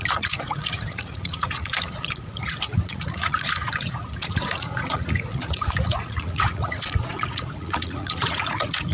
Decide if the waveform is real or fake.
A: fake